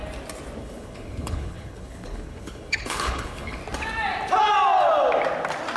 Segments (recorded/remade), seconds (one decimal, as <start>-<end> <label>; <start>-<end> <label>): 0.0-0.6 recorded; 0.6-3.6 remade; 3.6-5.8 recorded